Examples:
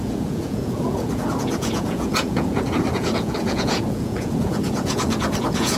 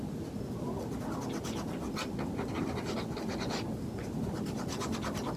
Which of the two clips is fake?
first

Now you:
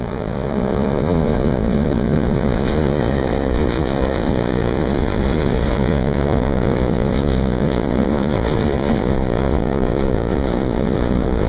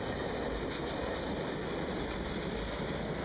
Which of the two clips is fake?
first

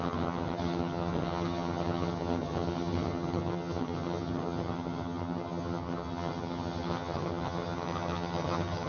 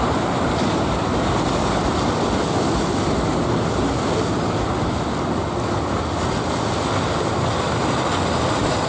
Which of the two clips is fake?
first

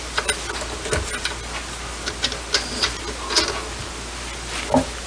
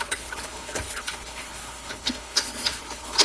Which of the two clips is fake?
second